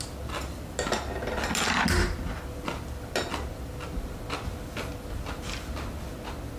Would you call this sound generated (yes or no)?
no